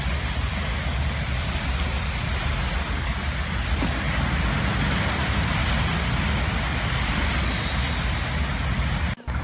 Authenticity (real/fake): real